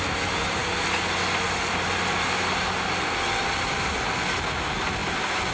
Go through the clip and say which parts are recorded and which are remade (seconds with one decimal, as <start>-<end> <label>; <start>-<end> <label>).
0.0-5.5 recorded